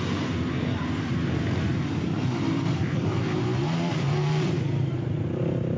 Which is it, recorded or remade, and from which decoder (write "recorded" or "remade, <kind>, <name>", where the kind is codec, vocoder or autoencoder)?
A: remade, vocoder, BigVGAN v2